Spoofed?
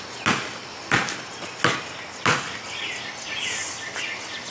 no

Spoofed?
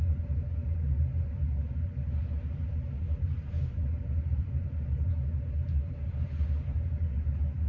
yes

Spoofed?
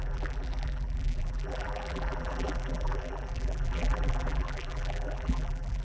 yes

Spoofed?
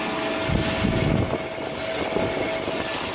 no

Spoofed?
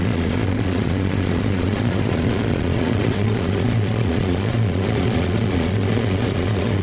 yes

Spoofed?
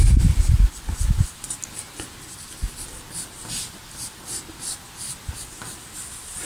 no